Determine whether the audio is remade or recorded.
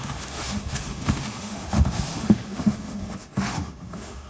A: remade